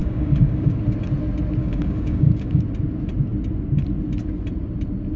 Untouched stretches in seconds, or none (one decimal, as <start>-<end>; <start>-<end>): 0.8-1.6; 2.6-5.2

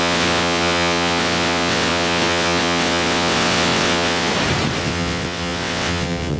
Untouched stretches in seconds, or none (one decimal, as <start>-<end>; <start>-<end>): 4.3-4.8

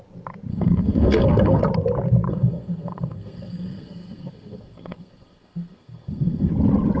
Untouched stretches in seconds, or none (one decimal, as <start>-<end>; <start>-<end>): 0.0-0.5; 1.6-2.3; 6.5-7.0

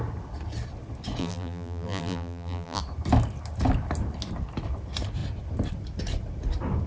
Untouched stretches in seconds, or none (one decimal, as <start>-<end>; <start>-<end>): 0.0-1.2; 2.8-6.9

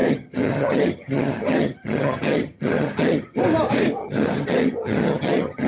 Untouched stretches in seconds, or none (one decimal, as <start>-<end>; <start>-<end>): 3.4-4.0

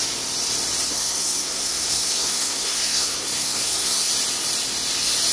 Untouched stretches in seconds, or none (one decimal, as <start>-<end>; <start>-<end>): 0.0-0.9; 4.1-5.3